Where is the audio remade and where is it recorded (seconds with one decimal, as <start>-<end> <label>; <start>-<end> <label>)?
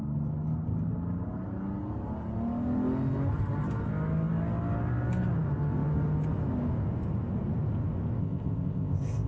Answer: 0.0-8.2 recorded; 8.2-9.3 remade